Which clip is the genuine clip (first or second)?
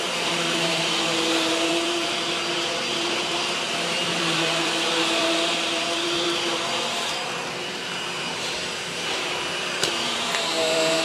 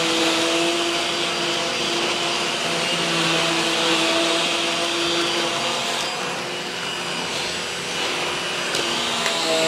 second